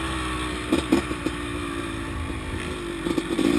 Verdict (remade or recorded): recorded